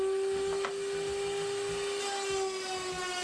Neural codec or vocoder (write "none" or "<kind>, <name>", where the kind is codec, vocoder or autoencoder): none